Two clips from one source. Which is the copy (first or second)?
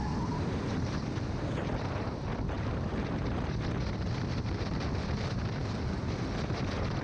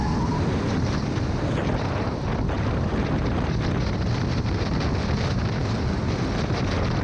first